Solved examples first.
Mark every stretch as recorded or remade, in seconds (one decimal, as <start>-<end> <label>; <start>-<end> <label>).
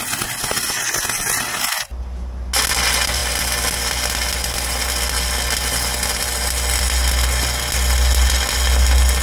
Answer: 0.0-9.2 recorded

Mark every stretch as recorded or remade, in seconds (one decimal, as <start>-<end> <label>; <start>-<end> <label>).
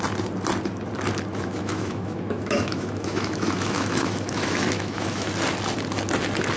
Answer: 0.0-1.3 recorded; 1.3-5.3 remade; 5.3-6.6 recorded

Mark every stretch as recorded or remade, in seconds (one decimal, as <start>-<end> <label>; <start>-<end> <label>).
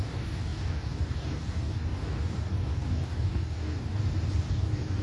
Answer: 0.0-4.0 remade; 4.0-4.5 recorded; 4.5-5.0 remade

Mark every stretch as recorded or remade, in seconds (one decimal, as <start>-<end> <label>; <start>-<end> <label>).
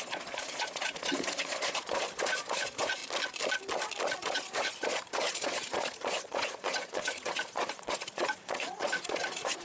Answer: 0.0-3.0 remade; 3.0-4.2 recorded; 4.2-9.6 remade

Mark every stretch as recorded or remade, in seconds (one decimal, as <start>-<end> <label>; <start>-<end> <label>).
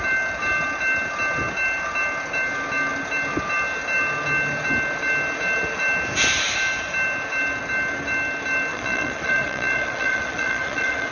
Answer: 0.0-8.7 recorded; 8.7-11.1 remade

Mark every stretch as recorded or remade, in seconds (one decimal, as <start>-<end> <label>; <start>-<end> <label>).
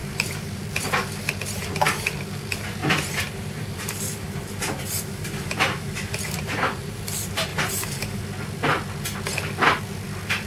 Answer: 0.0-0.6 remade; 0.6-2.8 recorded; 2.8-7.0 remade; 7.0-7.5 recorded; 7.5-8.2 remade; 8.2-10.5 recorded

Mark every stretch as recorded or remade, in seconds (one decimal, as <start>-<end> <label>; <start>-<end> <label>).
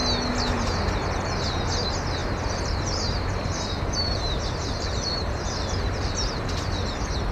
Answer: 0.0-2.2 recorded; 2.2-6.5 remade; 6.5-7.3 recorded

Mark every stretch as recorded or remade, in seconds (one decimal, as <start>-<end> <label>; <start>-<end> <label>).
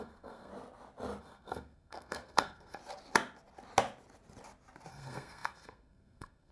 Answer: 0.0-0.5 remade; 0.5-1.2 recorded; 1.2-2.8 remade; 2.8-4.9 recorded; 4.9-6.5 remade